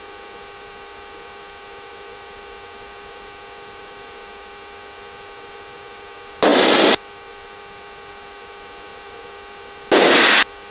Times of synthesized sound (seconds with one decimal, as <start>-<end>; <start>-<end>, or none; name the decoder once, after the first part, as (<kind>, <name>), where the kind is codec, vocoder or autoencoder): none